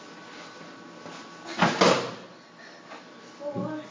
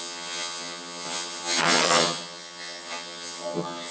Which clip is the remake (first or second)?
second